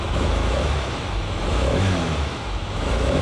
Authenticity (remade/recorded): remade